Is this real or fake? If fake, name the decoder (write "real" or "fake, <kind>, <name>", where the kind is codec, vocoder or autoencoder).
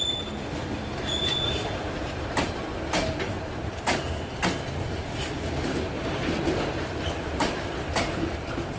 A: real